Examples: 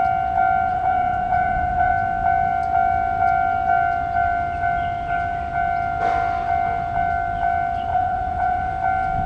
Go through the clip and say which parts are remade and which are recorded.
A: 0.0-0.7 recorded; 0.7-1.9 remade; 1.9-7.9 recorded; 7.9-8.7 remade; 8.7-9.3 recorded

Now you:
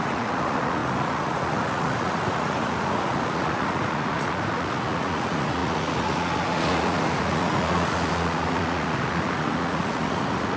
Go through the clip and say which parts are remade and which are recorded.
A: 0.0-10.6 remade

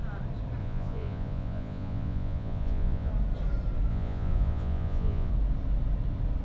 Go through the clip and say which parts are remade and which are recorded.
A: 0.0-0.6 recorded; 0.6-3.1 remade; 3.1-3.9 recorded; 3.9-5.3 remade; 5.3-6.4 recorded

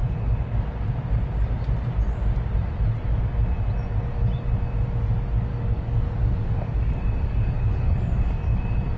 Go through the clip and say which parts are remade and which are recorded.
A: 0.0-5.5 recorded; 5.5-8.6 remade; 8.6-9.0 recorded

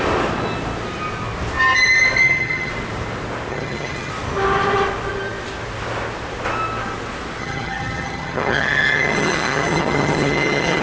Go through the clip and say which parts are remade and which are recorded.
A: 0.0-2.2 recorded; 2.2-2.7 remade; 2.7-3.5 recorded; 3.5-4.1 remade; 4.1-7.4 recorded; 7.4-10.8 remade